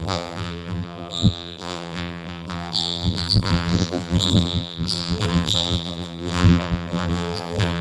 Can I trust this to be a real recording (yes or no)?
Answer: no